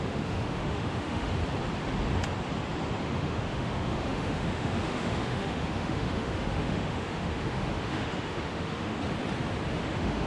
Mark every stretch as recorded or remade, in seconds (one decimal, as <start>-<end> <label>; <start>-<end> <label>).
0.0-1.4 remade; 1.4-3.0 recorded; 3.0-9.0 remade; 9.0-9.8 recorded; 9.8-10.3 remade